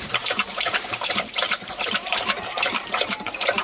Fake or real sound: fake